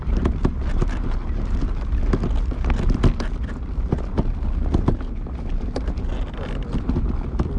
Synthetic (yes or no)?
no